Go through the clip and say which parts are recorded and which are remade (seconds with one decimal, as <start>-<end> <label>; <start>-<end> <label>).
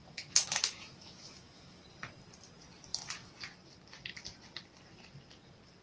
0.0-1.8 remade; 1.8-5.8 recorded